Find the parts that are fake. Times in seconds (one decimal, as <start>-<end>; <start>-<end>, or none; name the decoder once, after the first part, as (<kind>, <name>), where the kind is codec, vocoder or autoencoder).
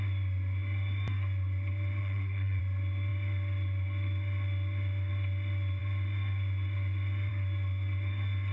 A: 2.0-2.6 (codec, SNAC)